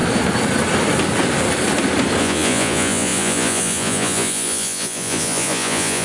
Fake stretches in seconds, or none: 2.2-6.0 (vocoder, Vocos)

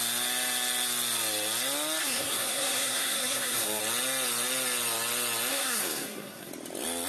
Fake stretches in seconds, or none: 2.0-3.8 (codec, SNAC); 5.5-6.5

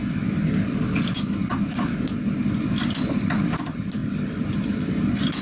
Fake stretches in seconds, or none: none

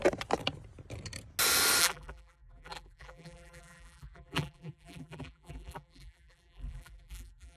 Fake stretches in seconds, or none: 1.8-7.6 (vocoder, BigVGAN v2)